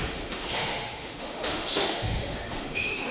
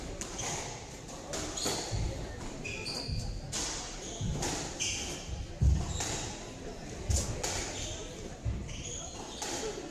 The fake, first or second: first